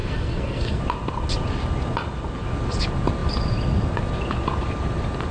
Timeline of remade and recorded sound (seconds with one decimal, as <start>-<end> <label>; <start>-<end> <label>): 0.0-0.8 remade; 0.8-5.3 recorded